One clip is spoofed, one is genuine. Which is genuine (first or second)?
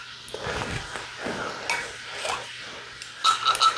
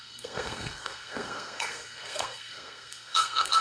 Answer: first